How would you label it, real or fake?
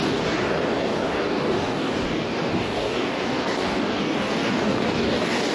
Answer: fake